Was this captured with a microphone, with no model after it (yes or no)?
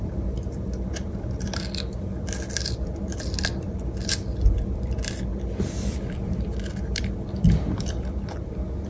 no